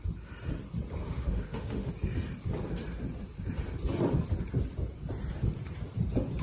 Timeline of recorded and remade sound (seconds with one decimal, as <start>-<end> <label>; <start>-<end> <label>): 0.0-1.0 recorded; 1.0-1.9 remade; 1.9-6.4 recorded